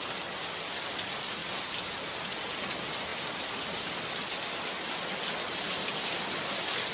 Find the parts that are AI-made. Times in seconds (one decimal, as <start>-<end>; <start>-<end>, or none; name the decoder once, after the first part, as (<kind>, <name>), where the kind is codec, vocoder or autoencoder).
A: none